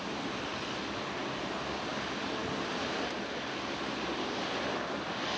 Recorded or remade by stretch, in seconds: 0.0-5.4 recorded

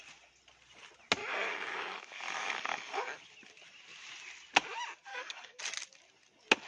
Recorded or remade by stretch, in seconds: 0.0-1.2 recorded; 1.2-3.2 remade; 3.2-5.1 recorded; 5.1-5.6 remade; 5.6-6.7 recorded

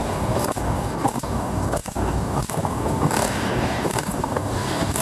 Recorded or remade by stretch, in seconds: 0.0-5.0 remade

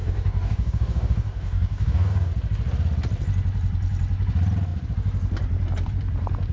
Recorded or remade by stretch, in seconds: 0.0-2.3 remade; 2.3-6.5 recorded

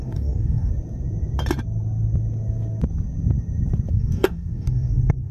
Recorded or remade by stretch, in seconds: 0.0-0.7 remade; 0.7-3.9 recorded; 3.9-5.3 remade

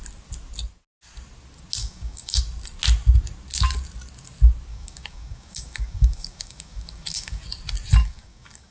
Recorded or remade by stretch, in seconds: 0.0-1.8 recorded; 1.8-2.4 remade; 2.4-4.7 recorded; 4.7-7.4 remade; 7.4-8.0 recorded; 8.0-8.7 remade